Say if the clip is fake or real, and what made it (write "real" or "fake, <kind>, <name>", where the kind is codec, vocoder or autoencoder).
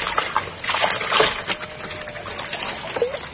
real